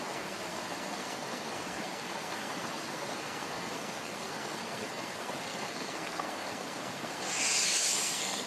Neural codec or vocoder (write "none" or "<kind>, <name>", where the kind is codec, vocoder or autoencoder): codec, SNAC